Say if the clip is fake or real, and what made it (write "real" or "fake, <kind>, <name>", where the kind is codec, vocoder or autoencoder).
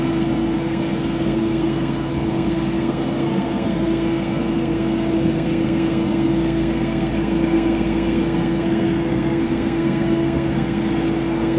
fake, codec, SNAC